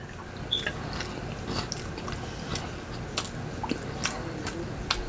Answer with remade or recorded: recorded